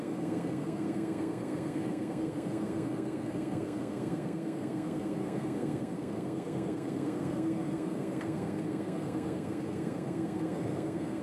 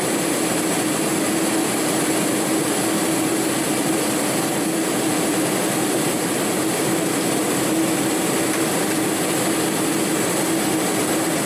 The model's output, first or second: first